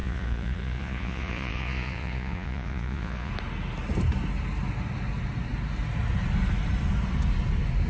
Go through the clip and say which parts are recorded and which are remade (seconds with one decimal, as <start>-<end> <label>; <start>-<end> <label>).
0.0-3.3 remade; 3.3-7.9 recorded